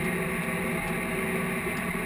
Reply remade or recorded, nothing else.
recorded